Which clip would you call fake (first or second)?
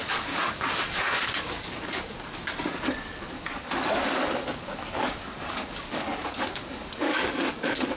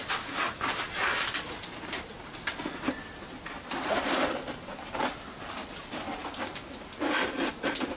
first